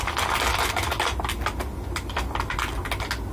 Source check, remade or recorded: recorded